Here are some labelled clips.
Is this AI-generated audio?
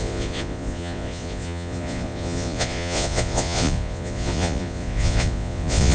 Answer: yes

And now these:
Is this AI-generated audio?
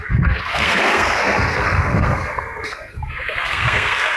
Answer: yes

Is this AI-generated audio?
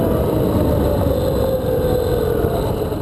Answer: no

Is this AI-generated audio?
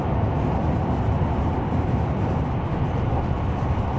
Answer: no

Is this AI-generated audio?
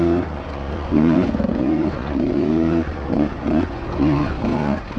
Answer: yes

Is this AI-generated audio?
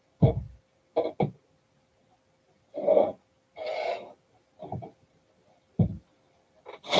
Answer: no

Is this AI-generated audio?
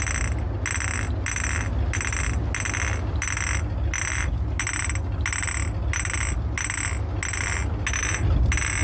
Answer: no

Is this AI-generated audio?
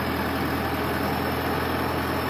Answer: no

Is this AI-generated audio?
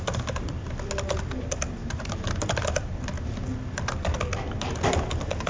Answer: no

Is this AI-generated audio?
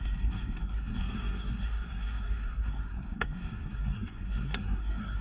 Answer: yes